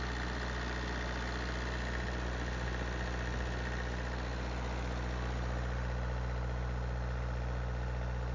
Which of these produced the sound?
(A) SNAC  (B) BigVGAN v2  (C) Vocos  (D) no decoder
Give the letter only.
D